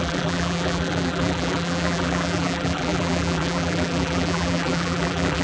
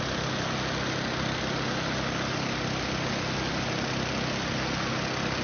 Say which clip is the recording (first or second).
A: second